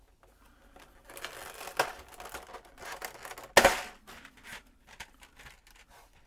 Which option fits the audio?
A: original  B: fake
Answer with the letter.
A